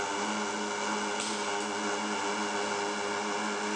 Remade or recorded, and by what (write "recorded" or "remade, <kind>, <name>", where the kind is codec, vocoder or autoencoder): recorded